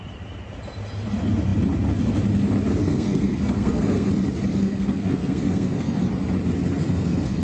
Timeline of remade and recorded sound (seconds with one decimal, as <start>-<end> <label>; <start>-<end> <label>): 0.0-2.8 recorded; 2.8-4.1 remade; 4.1-4.5 recorded; 4.5-6.0 remade; 6.0-6.8 recorded; 6.8-7.4 remade